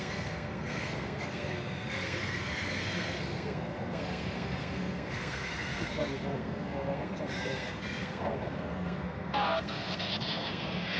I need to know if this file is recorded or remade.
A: remade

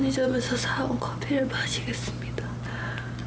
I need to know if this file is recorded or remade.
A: recorded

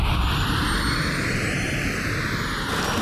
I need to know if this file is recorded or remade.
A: recorded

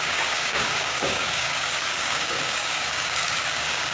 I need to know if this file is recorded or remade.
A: remade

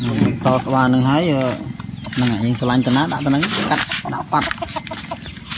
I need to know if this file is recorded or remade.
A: recorded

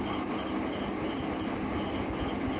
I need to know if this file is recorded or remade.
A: recorded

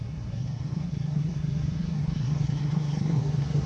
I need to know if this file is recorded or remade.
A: remade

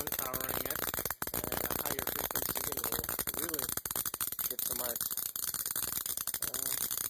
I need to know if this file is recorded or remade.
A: recorded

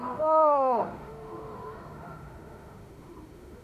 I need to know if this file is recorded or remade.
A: remade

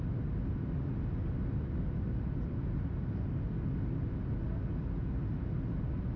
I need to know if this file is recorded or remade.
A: recorded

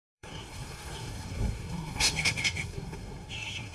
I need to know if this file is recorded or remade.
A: remade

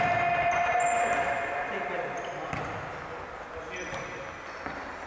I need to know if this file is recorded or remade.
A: recorded